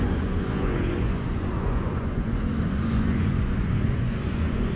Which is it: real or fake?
fake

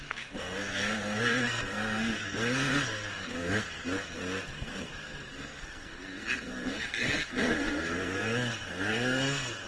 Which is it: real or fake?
fake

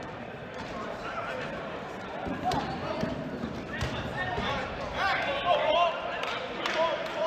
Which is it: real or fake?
fake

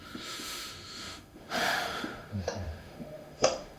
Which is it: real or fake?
fake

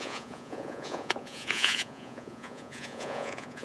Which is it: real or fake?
fake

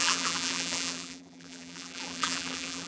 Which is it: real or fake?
fake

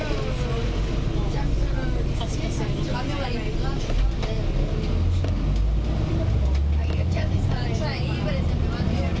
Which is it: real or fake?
real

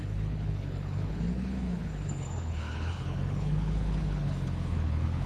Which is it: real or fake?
fake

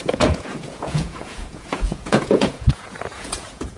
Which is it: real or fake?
fake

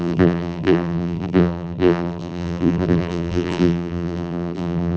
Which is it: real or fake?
fake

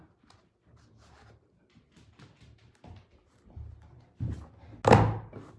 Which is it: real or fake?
real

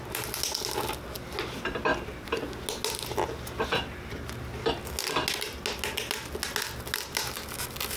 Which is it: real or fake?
real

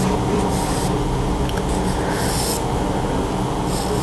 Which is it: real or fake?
real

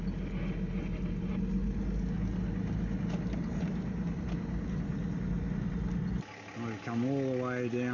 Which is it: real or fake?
real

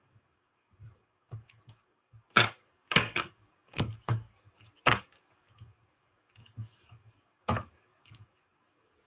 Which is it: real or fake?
fake